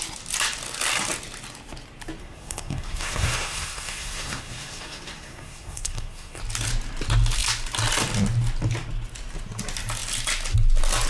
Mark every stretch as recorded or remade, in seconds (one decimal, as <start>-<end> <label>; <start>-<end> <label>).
0.0-2.2 recorded; 2.2-6.4 remade; 6.4-11.1 recorded